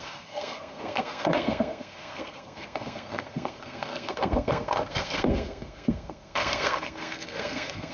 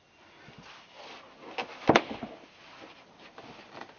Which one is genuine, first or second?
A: second